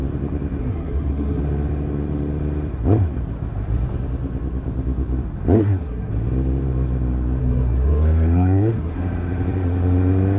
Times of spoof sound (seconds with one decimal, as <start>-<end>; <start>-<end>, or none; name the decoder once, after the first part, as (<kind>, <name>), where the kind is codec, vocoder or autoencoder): 0.6-1.4 (codec, SNAC); 5.6-6.1; 7.4-9.0